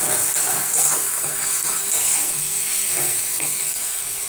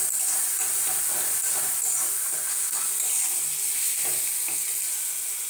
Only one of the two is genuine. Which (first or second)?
second